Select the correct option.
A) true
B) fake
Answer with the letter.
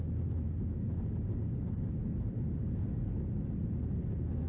A